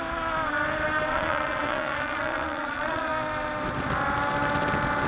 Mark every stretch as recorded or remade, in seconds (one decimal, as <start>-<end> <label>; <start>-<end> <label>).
0.0-1.1 recorded; 1.1-3.1 remade; 3.1-5.1 recorded